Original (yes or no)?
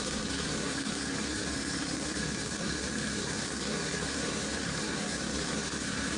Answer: no